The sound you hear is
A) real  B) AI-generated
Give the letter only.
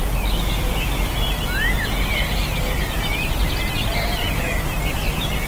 A